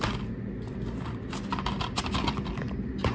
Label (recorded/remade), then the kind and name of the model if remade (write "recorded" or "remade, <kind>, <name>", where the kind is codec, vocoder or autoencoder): recorded